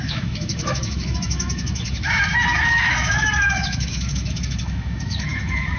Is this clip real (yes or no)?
no